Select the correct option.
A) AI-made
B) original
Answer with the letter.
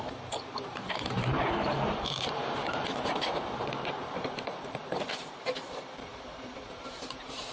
A